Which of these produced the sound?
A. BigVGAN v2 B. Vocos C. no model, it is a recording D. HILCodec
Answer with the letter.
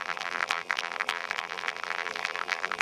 A